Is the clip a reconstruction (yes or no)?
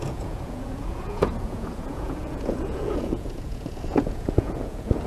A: yes